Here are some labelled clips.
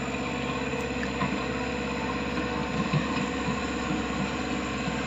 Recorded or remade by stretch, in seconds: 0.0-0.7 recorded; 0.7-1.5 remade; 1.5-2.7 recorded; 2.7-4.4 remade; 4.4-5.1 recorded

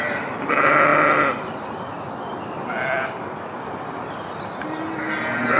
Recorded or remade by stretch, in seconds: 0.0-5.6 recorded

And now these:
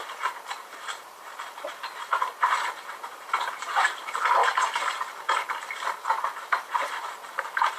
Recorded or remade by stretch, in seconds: 0.0-4.4 remade; 4.4-5.1 recorded; 5.1-7.8 remade